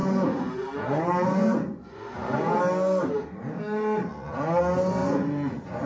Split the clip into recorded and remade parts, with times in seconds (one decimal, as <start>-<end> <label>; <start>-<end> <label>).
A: 0.0-2.6 remade; 2.6-4.1 recorded; 4.1-4.6 remade; 4.6-5.0 recorded; 5.0-5.9 remade